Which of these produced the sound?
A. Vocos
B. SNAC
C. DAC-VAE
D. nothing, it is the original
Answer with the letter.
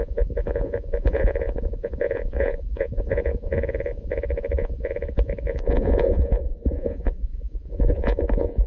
A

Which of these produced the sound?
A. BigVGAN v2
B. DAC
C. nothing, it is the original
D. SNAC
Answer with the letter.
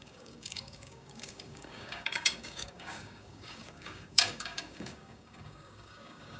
B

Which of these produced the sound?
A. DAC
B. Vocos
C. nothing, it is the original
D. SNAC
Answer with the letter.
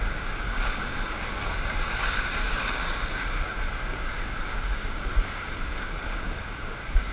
A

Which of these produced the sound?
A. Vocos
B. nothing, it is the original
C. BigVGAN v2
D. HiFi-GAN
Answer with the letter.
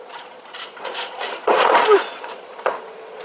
A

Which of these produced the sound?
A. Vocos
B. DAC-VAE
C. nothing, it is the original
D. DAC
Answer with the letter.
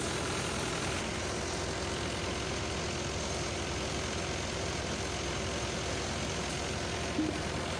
C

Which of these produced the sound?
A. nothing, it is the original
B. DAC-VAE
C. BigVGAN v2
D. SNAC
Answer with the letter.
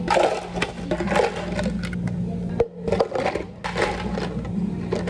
A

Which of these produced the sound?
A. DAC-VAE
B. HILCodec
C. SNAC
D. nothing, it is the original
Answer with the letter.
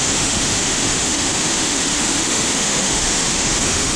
A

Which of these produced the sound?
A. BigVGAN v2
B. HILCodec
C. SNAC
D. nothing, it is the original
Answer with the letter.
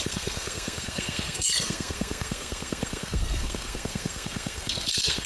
C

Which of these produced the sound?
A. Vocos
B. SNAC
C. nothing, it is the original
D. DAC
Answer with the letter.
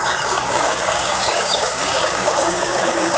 D